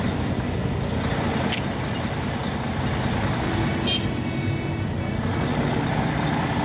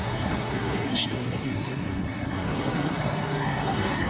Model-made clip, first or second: second